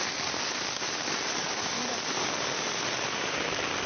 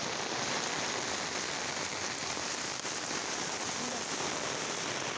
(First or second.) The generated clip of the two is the first